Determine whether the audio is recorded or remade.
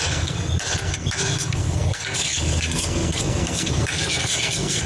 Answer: remade